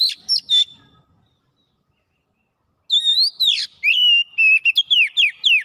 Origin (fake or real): real